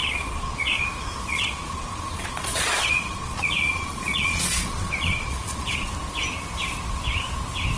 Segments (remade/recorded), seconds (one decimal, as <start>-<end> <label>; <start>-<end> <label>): 0.0-0.8 remade; 0.8-1.3 recorded; 1.3-5.9 remade; 5.9-7.8 recorded

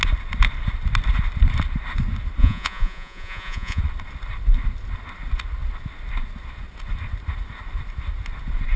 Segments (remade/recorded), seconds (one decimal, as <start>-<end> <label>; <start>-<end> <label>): 0.0-2.4 recorded; 2.4-3.8 remade; 3.8-8.8 recorded

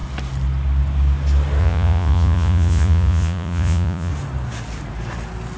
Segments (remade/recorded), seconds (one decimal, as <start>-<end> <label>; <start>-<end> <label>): 0.0-1.6 recorded; 1.6-4.1 remade; 4.1-5.6 recorded

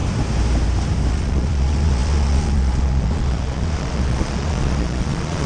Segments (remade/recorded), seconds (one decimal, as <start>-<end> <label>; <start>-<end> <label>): 0.0-1.1 recorded; 1.1-5.5 remade

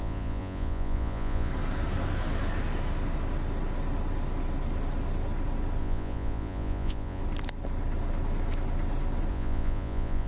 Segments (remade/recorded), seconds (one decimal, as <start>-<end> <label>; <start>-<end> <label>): 0.0-1.5 remade; 1.5-5.8 recorded; 5.8-7.2 remade; 7.2-9.3 recorded; 9.3-10.3 remade

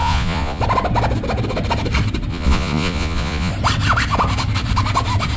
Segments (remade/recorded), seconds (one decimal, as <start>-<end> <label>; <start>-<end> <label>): 0.0-0.6 remade; 0.6-2.3 recorded; 2.3-3.5 remade; 3.5-5.4 recorded